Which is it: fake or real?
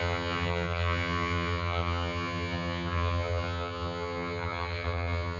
fake